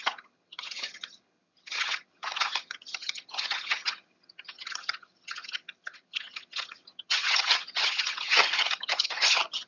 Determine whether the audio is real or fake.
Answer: fake